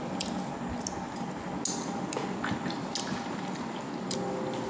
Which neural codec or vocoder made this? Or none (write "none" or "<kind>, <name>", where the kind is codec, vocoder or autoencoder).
none